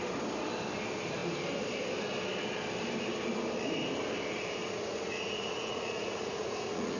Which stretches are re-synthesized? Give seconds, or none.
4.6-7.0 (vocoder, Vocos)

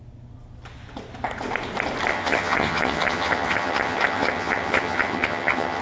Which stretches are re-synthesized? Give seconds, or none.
2.1-5.8 (vocoder, HiFi-GAN)

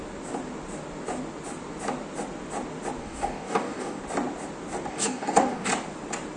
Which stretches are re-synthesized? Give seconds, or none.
3.0-4.0 (codec, DAC); 4.9-5.7

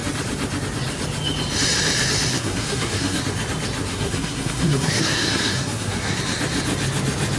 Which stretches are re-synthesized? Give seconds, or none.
2.3-3.2 (codec, SNAC); 3.9-6.2

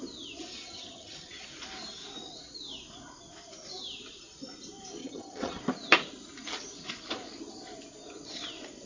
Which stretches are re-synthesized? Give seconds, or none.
0.5-1.3 (vocoder, HiFi-GAN); 5.0-5.6

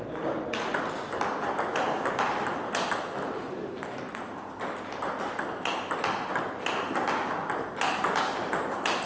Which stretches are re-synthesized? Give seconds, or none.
none